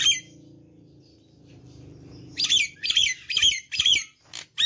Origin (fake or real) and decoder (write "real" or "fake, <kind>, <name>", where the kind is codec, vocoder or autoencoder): real